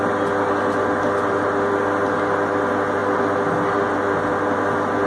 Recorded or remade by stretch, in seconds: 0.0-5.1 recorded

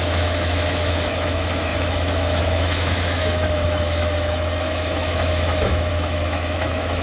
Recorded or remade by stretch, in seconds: 0.0-7.0 remade